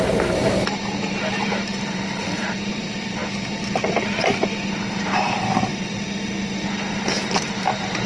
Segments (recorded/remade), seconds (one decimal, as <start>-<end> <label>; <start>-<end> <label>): 0.0-5.7 remade; 5.7-6.4 recorded; 6.4-8.1 remade